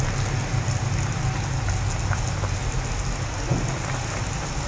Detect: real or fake real